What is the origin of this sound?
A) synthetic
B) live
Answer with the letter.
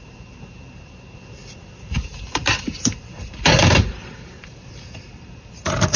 A